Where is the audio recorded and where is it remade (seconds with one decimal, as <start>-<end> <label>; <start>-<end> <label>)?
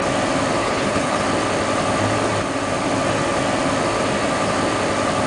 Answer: 0.0-0.6 recorded; 0.6-1.2 remade; 1.2-5.3 recorded